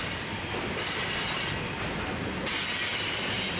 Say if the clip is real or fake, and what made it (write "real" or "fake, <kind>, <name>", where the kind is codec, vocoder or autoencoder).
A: real